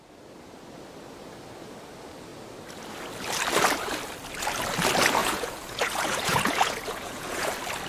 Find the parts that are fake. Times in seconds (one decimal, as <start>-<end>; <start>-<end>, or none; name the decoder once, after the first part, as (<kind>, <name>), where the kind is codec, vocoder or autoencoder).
5.2-7.5 (vocoder, Vocos)